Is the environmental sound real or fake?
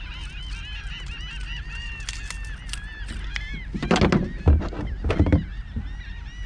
real